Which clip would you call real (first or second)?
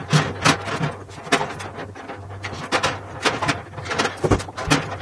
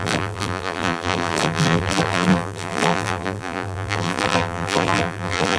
first